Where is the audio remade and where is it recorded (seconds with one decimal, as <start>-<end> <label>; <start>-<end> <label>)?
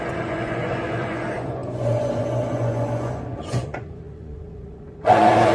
0.0-5.5 remade